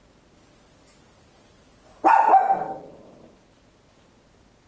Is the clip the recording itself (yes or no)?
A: yes